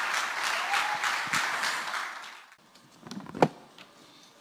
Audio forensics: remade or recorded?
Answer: recorded